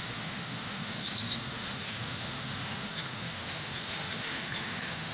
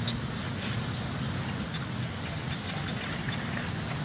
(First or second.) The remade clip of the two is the first